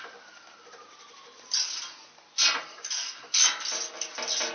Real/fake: real